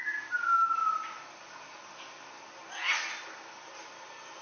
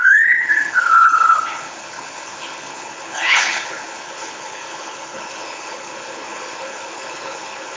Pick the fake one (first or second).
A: second